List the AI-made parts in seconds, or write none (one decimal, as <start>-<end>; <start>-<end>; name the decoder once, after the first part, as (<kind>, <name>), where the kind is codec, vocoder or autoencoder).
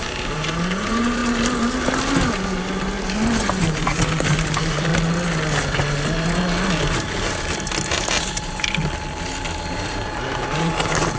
0.0-1.2 (vocoder, BigVGAN v2); 3.6-4.9; 7.9-8.8; 9.7-11.2